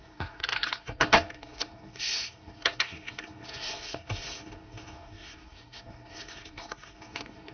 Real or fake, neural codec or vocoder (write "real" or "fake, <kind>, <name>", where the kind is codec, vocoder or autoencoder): fake, codec, SNAC